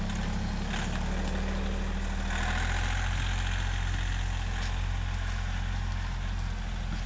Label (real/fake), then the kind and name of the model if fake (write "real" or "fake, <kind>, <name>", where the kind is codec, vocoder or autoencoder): real